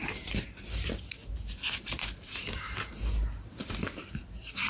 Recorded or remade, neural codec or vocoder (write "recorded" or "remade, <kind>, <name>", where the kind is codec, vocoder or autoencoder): remade, vocoder, BigVGAN v2